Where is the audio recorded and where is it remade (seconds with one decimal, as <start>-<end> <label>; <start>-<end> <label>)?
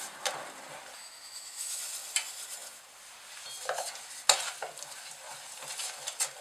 0.0-1.0 recorded; 1.0-1.8 remade; 1.8-6.4 recorded